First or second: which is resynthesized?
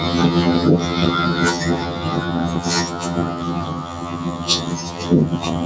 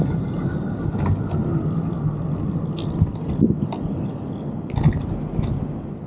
first